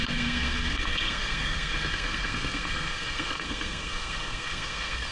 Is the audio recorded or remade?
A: remade